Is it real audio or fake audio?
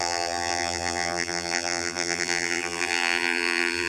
fake